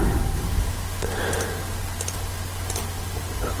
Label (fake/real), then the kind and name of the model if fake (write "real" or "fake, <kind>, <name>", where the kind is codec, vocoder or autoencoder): real